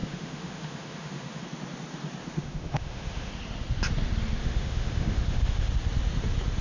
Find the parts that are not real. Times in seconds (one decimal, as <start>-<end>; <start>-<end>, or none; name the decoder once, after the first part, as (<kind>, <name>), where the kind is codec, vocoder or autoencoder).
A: 0.0-1.4 (autoencoder, DAC-VAE); 2.2-3.3; 4.4-5.7